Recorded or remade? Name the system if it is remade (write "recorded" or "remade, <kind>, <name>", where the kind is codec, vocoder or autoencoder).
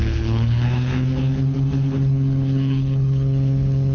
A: remade, codec, HILCodec